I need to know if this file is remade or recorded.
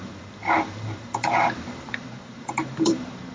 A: remade